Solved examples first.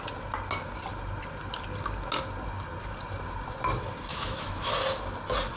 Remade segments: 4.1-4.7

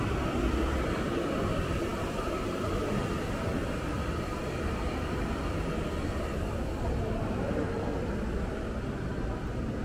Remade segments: none

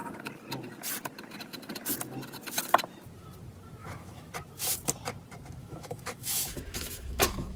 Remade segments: 3.8-4.3; 5.6-7.6

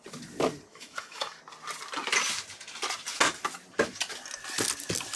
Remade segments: 0.7-1.4

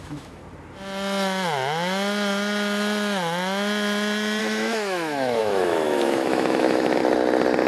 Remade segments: 0.0-0.4; 4.4-7.0